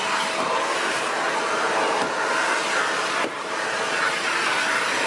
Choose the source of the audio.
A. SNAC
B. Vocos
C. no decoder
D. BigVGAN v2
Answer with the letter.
C